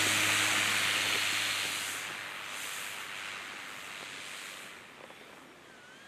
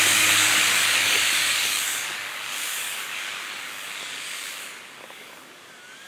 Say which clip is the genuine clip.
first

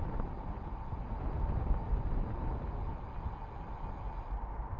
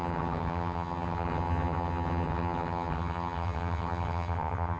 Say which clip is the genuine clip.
first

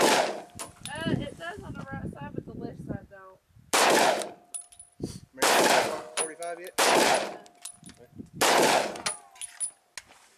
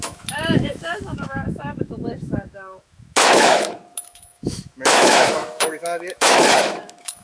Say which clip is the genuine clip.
first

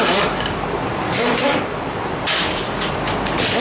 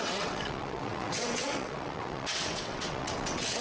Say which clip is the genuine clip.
first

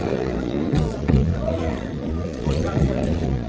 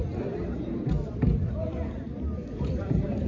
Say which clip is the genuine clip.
second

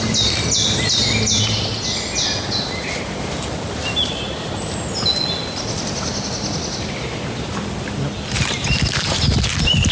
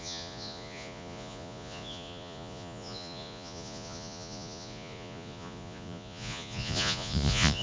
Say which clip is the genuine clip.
first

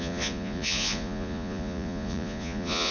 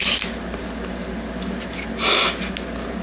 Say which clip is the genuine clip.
second